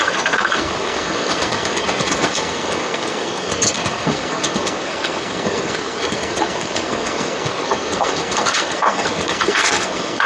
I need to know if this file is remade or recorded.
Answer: remade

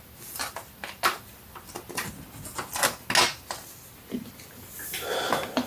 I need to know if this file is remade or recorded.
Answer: recorded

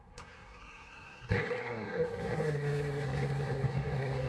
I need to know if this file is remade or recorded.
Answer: remade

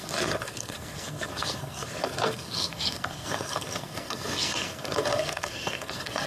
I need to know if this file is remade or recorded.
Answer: remade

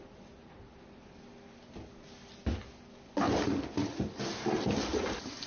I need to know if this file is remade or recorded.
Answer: recorded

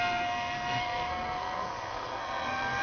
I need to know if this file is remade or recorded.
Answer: remade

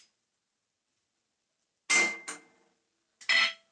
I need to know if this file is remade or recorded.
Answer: recorded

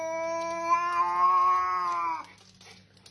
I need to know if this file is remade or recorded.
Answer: recorded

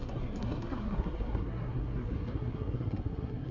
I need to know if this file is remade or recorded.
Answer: remade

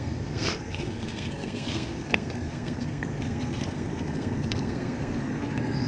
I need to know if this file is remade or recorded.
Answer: remade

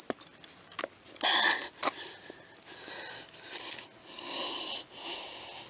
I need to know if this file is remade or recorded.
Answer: recorded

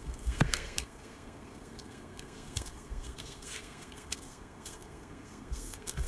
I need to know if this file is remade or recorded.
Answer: remade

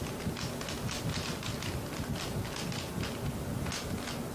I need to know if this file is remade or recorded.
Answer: recorded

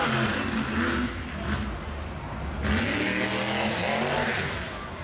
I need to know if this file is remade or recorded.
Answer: recorded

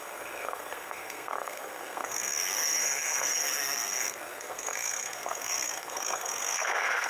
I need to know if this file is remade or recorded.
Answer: remade